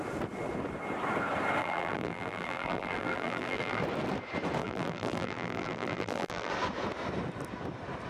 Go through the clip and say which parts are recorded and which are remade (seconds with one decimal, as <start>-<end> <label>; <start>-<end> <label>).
0.0-1.6 recorded; 1.6-3.8 remade; 3.8-4.6 recorded; 4.6-6.5 remade; 6.5-8.1 recorded